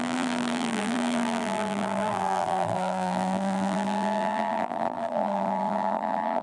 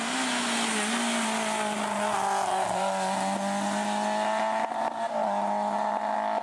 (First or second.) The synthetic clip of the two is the first